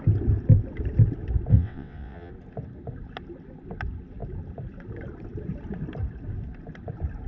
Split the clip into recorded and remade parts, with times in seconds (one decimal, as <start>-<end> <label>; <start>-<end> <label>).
0.0-1.5 recorded; 1.5-2.3 remade; 2.3-7.3 recorded